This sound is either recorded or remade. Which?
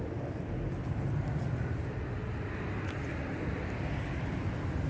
recorded